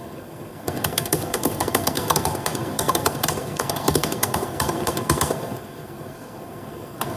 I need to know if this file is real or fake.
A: fake